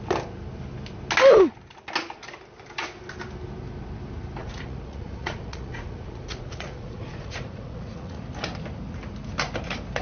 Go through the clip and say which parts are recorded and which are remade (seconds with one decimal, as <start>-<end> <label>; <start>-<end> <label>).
0.0-4.4 recorded; 4.4-8.2 remade; 8.2-10.0 recorded